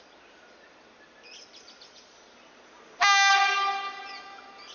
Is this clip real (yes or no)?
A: yes